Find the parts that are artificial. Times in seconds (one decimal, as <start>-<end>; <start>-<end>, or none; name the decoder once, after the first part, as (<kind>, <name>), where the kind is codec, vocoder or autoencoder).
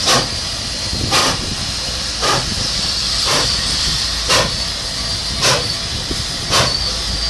1.2-3.8 (vocoder, BigVGAN v2)